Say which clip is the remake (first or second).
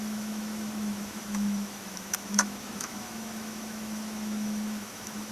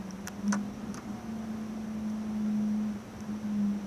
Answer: first